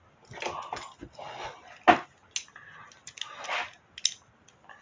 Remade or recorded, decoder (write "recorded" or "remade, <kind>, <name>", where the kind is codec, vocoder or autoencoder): recorded